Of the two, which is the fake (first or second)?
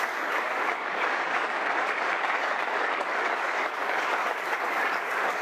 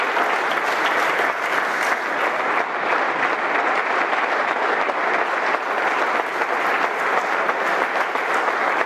first